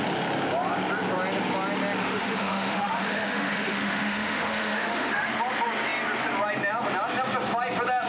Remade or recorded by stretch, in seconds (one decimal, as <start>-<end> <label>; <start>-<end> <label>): 0.0-2.0 recorded; 2.0-5.3 remade; 5.3-8.1 recorded